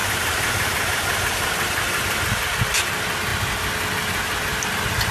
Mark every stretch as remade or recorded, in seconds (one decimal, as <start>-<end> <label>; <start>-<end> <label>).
0.0-2.2 remade; 2.2-5.1 recorded